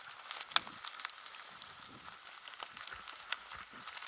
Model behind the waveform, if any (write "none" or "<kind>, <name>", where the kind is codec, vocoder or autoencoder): none